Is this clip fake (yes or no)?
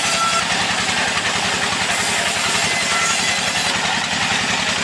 no